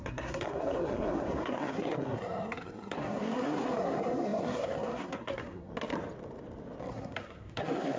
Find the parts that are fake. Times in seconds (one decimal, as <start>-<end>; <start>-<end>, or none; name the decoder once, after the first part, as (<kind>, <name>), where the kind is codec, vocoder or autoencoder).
0.0-5.7 (codec, SNAC); 6.9-8.0